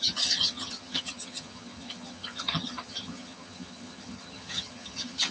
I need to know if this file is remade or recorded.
remade